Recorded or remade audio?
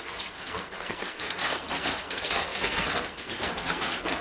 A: remade